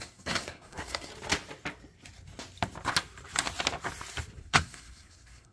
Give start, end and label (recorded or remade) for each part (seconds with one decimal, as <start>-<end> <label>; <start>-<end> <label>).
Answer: 0.0-1.1 remade; 1.1-4.4 recorded; 4.4-5.5 remade